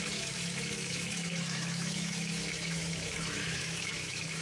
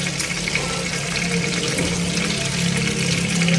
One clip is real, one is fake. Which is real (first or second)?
second